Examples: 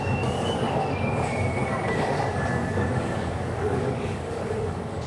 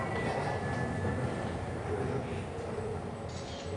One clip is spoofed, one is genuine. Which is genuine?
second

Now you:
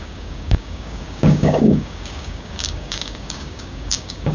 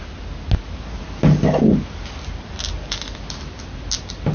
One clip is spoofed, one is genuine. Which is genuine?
second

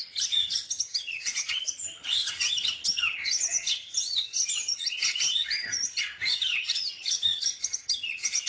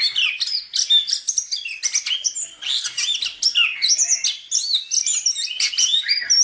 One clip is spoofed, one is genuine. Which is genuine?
second